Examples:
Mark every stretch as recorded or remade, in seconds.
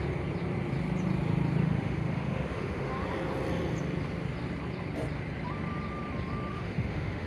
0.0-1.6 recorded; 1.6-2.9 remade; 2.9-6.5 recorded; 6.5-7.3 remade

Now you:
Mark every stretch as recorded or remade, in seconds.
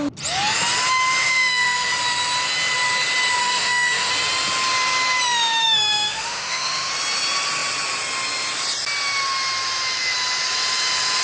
0.0-1.2 recorded; 1.2-1.9 remade; 1.9-3.4 recorded; 3.4-4.1 remade; 4.1-5.3 recorded; 5.3-6.9 remade; 6.9-11.2 recorded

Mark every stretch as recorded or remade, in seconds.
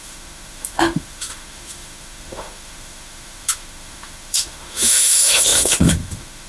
0.0-6.5 remade